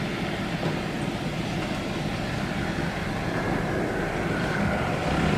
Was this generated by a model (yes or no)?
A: no